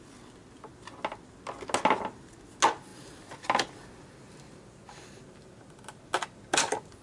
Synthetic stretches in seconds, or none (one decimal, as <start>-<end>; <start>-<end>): none

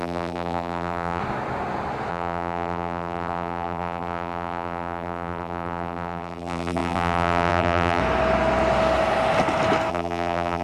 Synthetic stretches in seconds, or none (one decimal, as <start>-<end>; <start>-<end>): 0.0-1.2; 2.1-8.0; 9.9-10.6